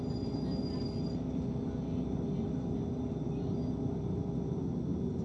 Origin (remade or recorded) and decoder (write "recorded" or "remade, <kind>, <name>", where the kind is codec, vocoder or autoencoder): recorded